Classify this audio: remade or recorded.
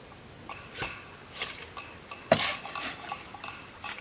recorded